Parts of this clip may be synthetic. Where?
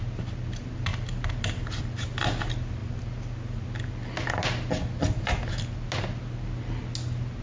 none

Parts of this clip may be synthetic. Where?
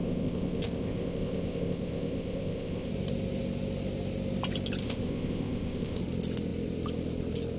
0.0-2.9 (codec, ZipCodec); 4.8-6.0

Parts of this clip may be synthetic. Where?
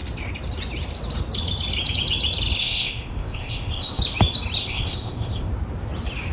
2.6-4.0 (codec, ZipCodec); 4.6-5.5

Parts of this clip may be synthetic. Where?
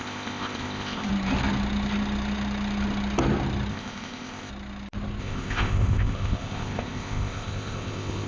0.0-1.1 (codec, ZipCodec); 3.7-4.5; 5.2-8.3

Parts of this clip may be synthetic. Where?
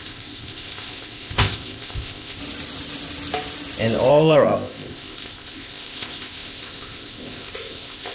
0.0-2.4 (codec, ZipCodec); 4.1-8.1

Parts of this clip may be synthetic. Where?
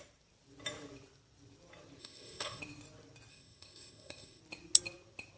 2.0-2.6 (codec, ZipCodec); 3.3-4.4